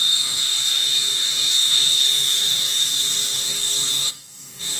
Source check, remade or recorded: remade